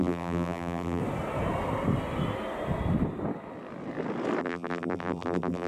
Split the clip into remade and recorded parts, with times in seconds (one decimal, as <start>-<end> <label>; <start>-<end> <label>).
0.0-1.0 remade; 1.0-4.4 recorded; 4.4-5.7 remade

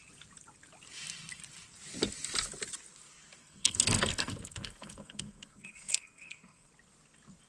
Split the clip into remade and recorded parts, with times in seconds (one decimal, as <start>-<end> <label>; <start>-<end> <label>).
0.0-3.4 recorded; 3.4-6.7 remade; 6.7-7.5 recorded

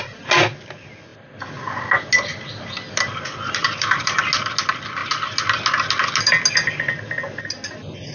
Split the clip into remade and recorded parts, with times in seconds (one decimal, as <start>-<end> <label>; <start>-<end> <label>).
0.0-3.6 recorded; 3.6-4.3 remade; 4.3-8.1 recorded

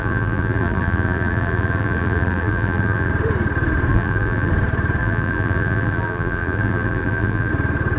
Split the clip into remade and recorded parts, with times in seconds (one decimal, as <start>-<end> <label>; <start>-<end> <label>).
0.0-3.1 remade; 3.1-3.9 recorded; 3.9-4.5 remade; 4.5-5.0 recorded; 5.0-7.5 remade; 7.5-8.0 recorded